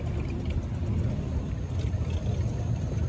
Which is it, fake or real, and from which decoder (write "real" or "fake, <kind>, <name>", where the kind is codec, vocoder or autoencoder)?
real